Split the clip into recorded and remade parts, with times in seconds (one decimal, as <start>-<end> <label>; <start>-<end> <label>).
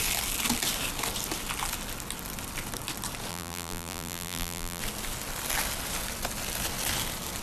0.0-3.3 recorded; 3.3-4.8 remade; 4.8-7.4 recorded